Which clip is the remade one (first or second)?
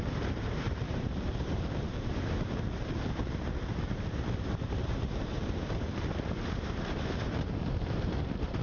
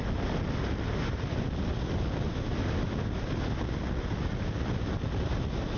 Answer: first